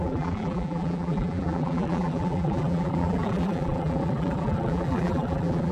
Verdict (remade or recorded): remade